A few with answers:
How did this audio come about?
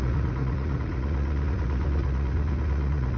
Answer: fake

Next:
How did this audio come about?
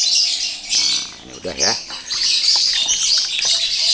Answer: real